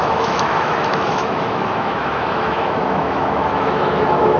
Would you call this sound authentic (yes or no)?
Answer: no